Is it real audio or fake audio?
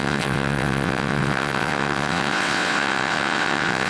fake